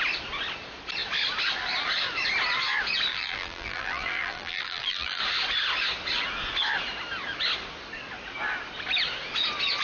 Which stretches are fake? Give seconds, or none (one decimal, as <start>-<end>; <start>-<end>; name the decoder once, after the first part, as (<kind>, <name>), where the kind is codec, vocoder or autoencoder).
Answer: 3.1-5.2 (vocoder, BigVGAN v2)